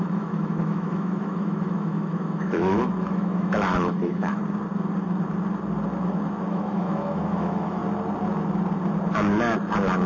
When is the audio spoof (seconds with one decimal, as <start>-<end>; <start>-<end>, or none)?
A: 0.0-4.4; 6.5-7.8